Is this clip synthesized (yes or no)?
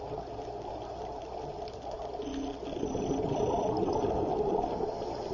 no